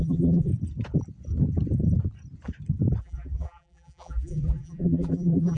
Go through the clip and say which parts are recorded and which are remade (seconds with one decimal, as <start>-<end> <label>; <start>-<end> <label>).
0.0-0.5 remade; 0.5-3.0 recorded; 3.0-5.6 remade